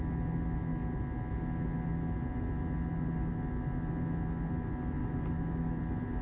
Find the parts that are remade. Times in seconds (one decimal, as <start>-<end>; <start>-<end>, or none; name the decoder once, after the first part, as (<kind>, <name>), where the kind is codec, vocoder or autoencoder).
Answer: 5.0-5.8 (autoencoder, DAC-VAE)